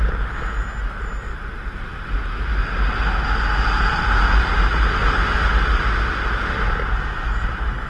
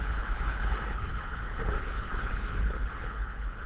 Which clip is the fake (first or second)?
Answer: second